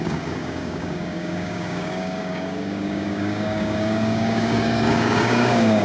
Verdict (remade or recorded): remade